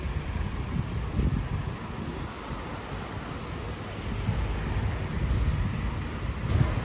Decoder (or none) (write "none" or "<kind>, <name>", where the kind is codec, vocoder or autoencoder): none